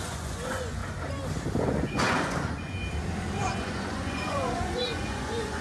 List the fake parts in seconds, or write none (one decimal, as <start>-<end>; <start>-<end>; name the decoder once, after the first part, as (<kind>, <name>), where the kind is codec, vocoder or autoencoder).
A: 0.0-0.8 (vocoder, Vocos); 1.6-2.8; 3.4-5.6